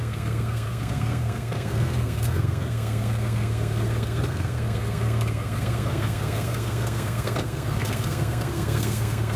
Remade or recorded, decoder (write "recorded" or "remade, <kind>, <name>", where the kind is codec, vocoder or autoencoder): remade, codec, SNAC